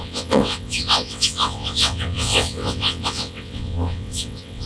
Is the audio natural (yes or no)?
no